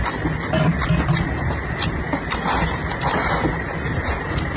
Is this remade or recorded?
recorded